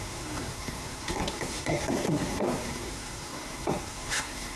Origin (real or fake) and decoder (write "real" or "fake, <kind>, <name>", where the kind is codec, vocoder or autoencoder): fake, codec, SNAC